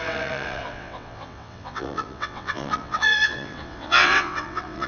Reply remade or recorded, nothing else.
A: remade